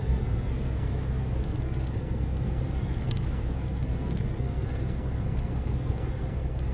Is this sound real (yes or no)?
no